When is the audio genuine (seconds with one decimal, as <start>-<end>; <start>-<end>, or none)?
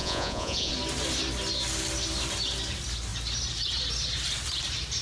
0.7-5.0